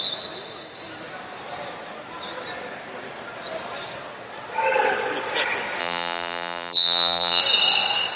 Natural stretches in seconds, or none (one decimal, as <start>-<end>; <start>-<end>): 0.0-5.8; 7.4-8.2